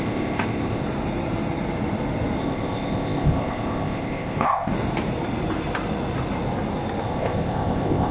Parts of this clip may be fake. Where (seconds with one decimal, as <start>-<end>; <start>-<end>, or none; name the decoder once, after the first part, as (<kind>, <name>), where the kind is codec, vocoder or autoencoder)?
0.0-0.8 (codec, ZipCodec); 2.4-4.7; 7.0-8.1

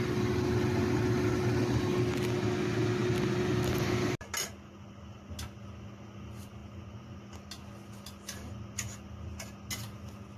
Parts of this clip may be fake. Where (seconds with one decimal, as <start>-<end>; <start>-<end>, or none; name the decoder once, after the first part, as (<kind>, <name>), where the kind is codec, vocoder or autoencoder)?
6.6-7.2 (vocoder, BigVGAN v2)